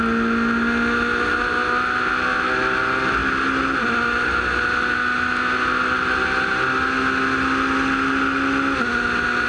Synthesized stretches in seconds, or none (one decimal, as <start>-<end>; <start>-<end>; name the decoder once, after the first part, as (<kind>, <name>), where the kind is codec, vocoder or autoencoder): none